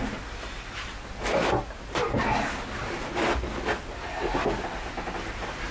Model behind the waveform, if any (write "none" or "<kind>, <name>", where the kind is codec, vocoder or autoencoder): none